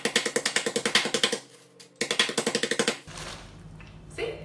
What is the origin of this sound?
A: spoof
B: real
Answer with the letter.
B